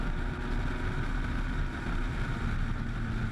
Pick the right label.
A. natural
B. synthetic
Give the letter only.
A